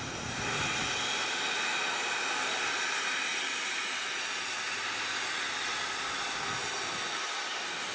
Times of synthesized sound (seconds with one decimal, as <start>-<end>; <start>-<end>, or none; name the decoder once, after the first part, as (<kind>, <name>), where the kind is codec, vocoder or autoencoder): none